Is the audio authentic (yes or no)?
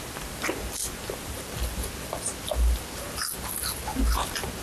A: yes